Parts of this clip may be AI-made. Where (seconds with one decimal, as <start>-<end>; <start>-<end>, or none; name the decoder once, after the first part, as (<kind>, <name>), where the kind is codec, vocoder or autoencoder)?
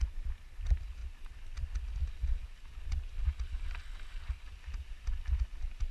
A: none